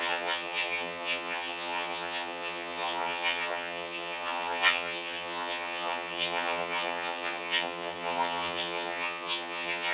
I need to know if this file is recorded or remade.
remade